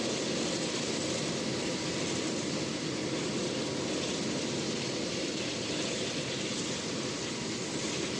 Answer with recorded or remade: recorded